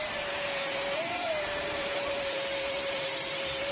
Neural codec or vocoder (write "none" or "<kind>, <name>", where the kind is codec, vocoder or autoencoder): vocoder, BigVGAN v2